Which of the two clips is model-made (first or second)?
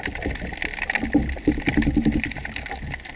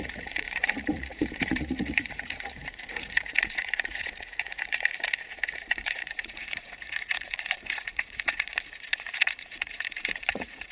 second